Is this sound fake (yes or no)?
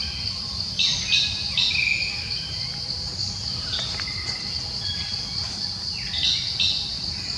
no